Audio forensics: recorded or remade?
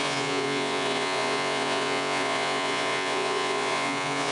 remade